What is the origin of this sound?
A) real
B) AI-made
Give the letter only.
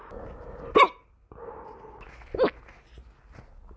A